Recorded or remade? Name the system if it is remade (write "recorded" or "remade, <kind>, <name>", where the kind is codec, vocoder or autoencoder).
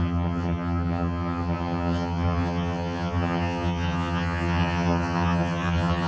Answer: remade, vocoder, HiFi-GAN